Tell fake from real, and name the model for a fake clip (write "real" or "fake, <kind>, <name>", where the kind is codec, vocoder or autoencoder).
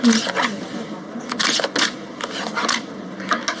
real